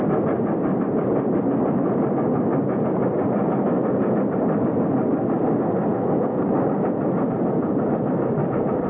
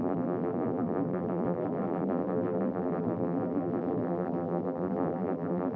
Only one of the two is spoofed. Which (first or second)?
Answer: second